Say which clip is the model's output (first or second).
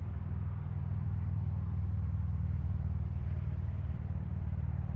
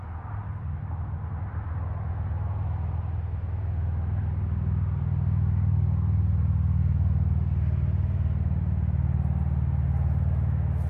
first